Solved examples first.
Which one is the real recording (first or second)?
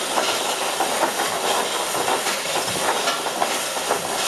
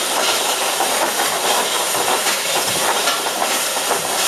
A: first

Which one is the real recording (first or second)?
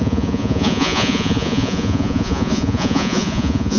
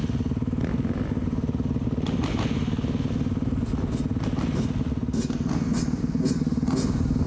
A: second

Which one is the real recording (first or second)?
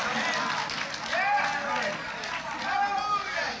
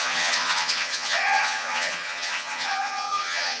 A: first